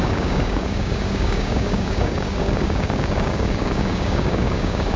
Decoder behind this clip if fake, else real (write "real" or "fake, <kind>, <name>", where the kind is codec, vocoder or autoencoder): fake, codec, DAC